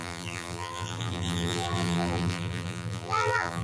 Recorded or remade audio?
remade